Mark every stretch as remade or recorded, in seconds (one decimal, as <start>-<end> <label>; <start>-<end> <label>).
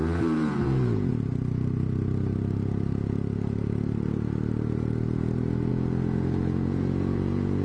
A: 0.0-1.1 remade; 1.1-5.7 recorded; 5.7-7.6 remade